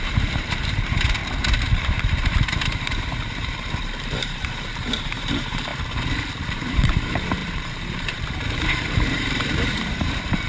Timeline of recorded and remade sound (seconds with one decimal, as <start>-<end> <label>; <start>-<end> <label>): 0.0-1.2 remade; 1.2-2.3 recorded; 2.3-5.7 remade; 5.7-6.5 recorded; 6.5-10.5 remade